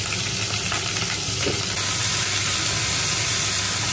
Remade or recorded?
recorded